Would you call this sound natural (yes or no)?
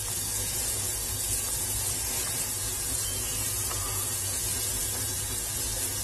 no